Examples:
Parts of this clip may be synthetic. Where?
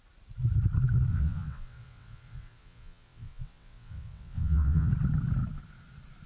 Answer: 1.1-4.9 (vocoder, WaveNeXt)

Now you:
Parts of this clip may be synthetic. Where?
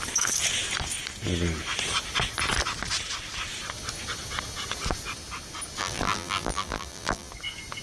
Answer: 5.8-7.3 (vocoder, BigVGAN v2)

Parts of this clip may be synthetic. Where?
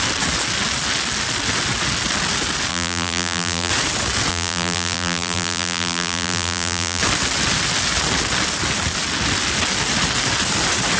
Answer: 2.7-3.7 (vocoder, BigVGAN v2); 4.3-7.0